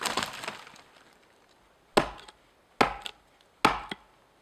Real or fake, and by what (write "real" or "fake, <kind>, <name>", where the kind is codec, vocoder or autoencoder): real